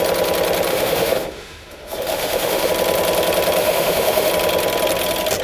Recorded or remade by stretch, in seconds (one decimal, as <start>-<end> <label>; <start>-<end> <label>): 0.0-0.7 recorded; 0.7-2.7 remade; 2.7-3.6 recorded; 3.6-4.3 remade; 4.3-5.4 recorded